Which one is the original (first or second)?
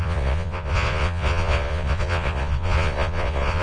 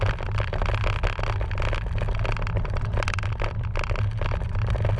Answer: second